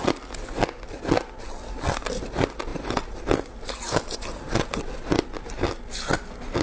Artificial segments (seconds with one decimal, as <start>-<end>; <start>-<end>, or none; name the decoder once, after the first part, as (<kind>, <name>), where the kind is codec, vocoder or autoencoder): none